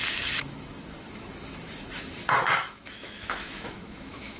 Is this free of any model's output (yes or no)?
no